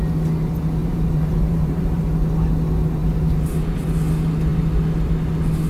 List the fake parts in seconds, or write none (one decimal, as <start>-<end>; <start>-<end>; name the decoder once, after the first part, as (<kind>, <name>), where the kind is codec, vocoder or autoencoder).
0.8-2.0 (vocoder, BigVGAN v2); 3.0-3.5